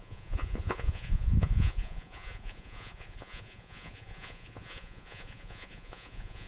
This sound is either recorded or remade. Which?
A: remade